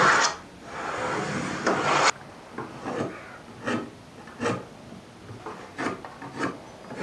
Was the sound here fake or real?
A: real